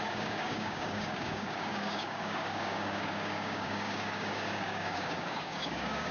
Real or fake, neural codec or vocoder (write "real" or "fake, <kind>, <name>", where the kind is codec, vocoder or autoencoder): fake, codec, DAC